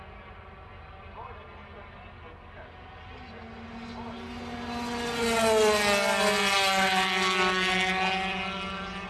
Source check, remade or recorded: recorded